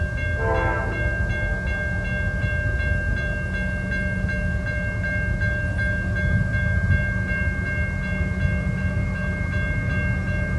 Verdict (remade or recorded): recorded